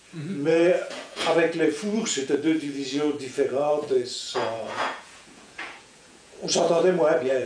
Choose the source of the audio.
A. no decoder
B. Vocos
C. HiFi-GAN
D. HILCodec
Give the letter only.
B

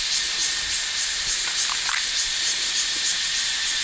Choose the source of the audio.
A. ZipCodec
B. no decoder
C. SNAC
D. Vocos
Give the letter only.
B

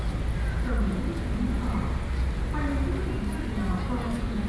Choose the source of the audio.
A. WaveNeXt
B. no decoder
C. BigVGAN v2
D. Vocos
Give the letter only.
B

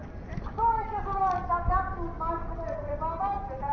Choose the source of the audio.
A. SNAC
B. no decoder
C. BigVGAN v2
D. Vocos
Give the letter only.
B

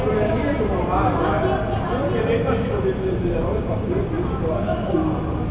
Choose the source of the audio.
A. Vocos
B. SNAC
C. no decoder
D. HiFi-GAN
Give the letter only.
C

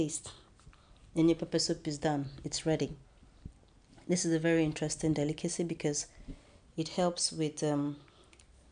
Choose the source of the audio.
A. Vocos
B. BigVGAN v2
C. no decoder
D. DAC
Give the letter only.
C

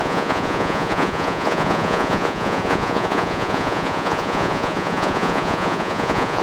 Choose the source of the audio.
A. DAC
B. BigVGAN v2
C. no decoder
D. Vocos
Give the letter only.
D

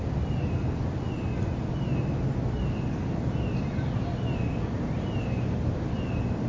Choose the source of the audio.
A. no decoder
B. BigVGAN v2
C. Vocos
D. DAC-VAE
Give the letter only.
A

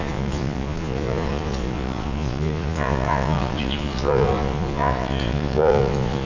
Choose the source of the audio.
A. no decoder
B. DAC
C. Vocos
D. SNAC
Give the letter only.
C